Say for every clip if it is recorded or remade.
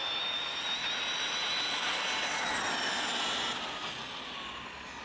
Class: recorded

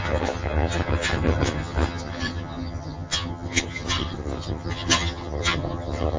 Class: remade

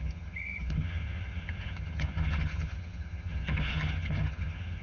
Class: remade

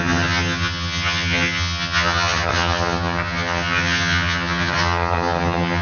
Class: remade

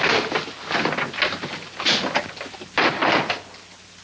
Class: recorded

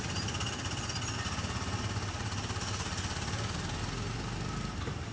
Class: recorded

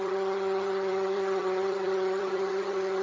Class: remade